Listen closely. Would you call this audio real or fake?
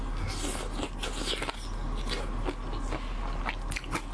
real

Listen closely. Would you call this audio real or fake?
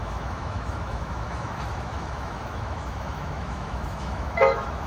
fake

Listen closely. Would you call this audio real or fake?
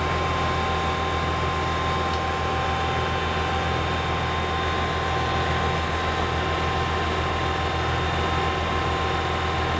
real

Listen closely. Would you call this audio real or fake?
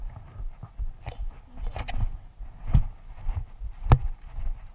real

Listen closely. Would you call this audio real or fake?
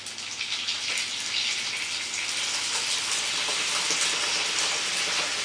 real